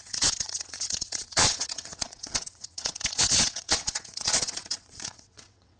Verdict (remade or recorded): remade